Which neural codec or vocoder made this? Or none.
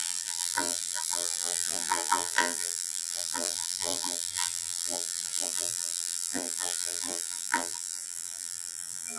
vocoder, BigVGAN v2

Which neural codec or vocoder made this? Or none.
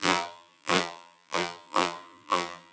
vocoder, BigVGAN v2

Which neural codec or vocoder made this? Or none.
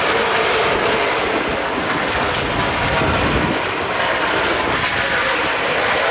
none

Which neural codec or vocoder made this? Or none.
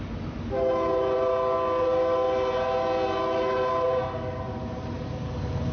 none